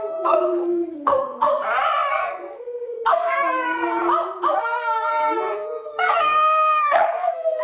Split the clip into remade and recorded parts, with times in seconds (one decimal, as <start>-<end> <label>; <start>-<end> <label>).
0.0-1.5 remade; 1.5-2.1 recorded; 2.1-4.0 remade; 4.0-4.6 recorded; 4.6-7.6 remade